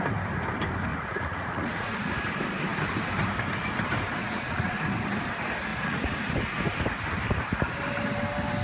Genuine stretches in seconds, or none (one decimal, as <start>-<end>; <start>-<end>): 0.0-0.9; 2.1-4.2; 4.8-5.7; 6.3-8.6